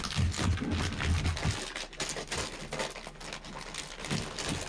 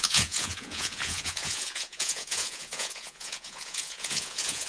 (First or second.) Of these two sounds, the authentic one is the first